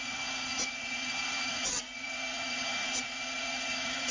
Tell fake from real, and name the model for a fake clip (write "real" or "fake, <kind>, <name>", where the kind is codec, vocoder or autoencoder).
fake, vocoder, Vocos